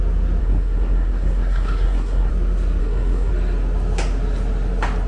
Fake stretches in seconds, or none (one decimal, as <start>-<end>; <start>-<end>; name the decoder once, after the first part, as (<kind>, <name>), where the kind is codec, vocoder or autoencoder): 0.4-2.3 (codec, SNAC); 2.8-3.3